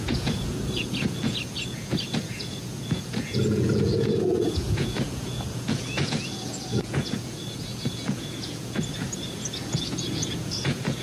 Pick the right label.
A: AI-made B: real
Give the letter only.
A